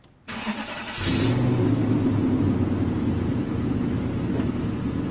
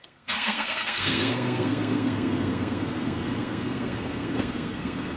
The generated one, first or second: second